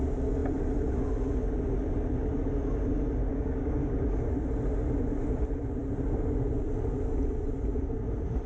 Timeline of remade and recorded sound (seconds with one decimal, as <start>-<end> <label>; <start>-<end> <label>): 0.0-3.3 recorded; 3.3-3.9 remade; 3.9-8.5 recorded